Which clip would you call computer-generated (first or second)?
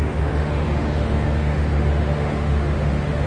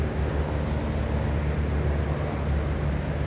first